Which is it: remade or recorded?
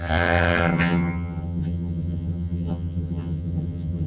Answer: remade